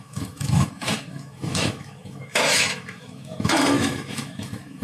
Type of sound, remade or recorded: remade